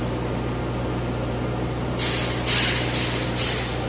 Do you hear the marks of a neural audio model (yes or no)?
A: no